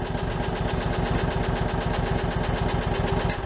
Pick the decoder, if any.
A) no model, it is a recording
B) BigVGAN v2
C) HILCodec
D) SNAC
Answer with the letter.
A